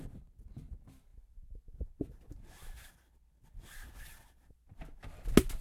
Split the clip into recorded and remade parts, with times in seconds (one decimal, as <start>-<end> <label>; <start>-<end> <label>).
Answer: 0.0-5.6 recorded